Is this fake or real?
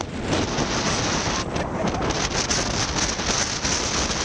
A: real